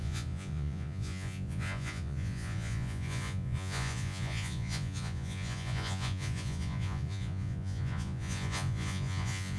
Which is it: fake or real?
fake